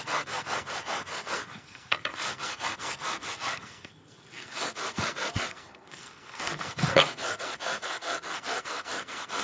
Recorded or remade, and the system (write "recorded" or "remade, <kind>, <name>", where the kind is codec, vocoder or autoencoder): remade, codec, SNAC